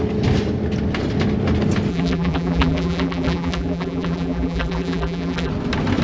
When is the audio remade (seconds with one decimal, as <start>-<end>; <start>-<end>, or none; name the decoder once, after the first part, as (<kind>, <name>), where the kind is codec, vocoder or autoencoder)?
1.9-5.5 (vocoder, BigVGAN v2)